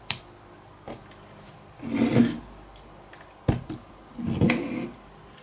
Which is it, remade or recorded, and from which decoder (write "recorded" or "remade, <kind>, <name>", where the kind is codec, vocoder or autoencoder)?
recorded